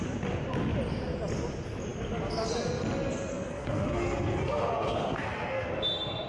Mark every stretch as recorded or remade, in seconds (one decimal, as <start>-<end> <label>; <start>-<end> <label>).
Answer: 0.0-3.3 recorded; 3.3-5.7 remade; 5.7-6.3 recorded